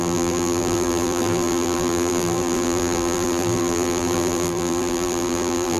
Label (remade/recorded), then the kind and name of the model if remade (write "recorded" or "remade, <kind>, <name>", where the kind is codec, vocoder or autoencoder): remade, vocoder, BigVGAN v2